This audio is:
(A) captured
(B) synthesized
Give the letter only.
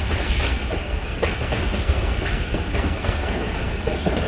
B